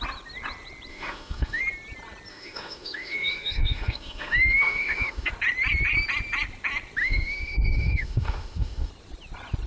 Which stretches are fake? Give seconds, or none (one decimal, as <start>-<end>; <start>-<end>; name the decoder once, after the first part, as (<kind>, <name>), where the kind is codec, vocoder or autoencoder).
0.9-1.6 (autoencoder, DAC-VAE); 2.3-5.3; 7.0-8.9